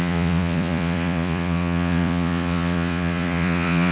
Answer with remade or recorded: remade